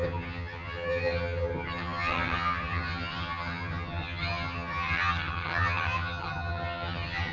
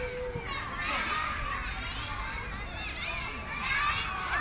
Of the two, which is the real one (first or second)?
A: second